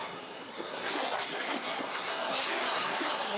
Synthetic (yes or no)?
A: yes